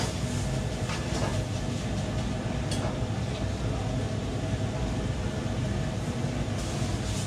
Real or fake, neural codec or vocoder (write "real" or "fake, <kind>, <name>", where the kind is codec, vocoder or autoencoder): real